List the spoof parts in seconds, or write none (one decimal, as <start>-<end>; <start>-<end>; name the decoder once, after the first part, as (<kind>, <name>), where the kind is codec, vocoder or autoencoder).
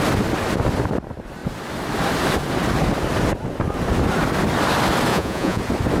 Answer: 5.1-5.6 (vocoder, Vocos)